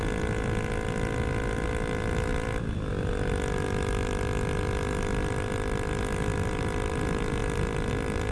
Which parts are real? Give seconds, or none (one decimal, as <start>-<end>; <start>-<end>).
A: 0.0-2.3; 2.9-6.3; 6.9-8.3

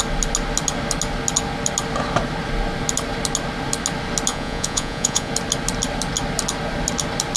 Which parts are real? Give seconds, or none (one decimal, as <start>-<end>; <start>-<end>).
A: 0.0-4.3; 5.3-7.4

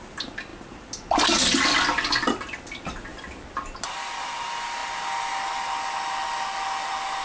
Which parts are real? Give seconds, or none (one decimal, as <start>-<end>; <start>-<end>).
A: 0.0-7.2

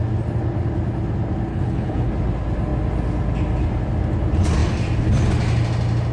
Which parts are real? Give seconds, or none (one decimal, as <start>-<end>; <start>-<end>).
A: 0.0-1.5; 2.1-6.1

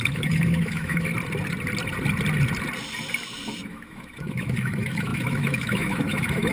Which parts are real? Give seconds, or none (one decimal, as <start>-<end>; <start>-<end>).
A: 1.1-3.6

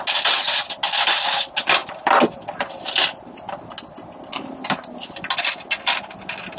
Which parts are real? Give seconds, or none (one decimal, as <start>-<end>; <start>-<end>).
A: 0.0-6.6